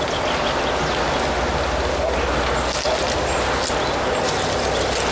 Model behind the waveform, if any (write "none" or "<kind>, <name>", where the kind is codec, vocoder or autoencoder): none